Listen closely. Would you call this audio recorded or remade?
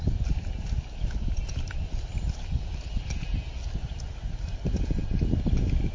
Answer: recorded